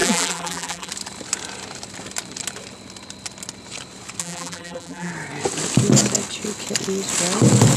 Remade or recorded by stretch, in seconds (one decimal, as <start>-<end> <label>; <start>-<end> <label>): 0.0-0.9 remade; 0.9-4.2 recorded; 4.2-5.1 remade; 5.1-7.8 recorded